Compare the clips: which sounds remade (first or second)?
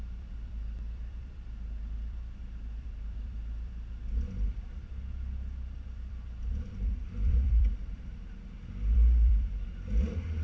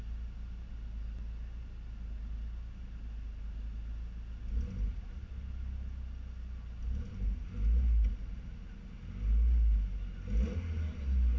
first